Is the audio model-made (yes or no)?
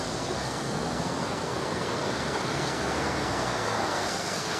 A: yes